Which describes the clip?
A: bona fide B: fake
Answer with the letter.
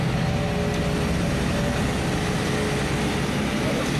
A